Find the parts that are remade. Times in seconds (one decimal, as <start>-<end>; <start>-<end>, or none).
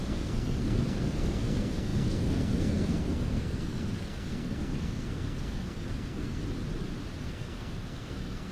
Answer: 0.0-6.4; 7.2-8.5